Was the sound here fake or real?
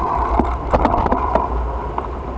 fake